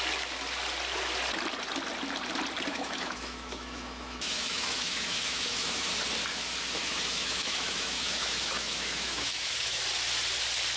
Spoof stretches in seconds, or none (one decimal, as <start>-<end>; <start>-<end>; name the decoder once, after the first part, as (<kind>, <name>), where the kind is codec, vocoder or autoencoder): 2.7-5.9 (autoencoder, DAC-VAE); 6.8-9.8